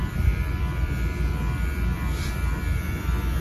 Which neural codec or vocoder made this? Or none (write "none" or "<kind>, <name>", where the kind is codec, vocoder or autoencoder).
vocoder, BigVGAN v2